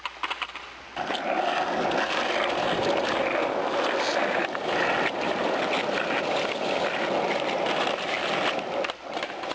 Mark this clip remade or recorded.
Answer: recorded